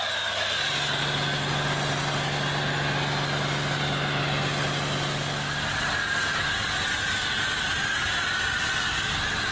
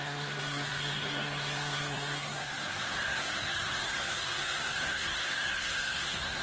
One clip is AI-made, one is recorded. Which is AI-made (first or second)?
second